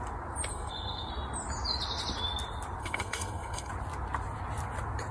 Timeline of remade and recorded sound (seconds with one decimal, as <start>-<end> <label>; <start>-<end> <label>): 0.0-0.5 recorded; 0.5-1.1 remade; 1.1-2.8 recorded; 2.8-3.7 remade; 3.7-5.1 recorded